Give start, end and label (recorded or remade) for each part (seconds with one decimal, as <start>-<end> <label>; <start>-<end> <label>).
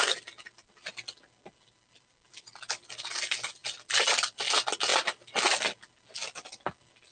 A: 0.0-7.1 recorded